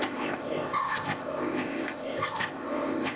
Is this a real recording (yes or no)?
no